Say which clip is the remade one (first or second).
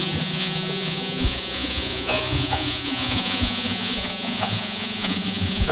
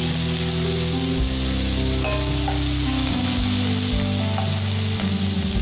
first